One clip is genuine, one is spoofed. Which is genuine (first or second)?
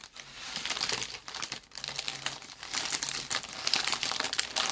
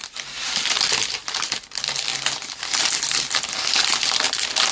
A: second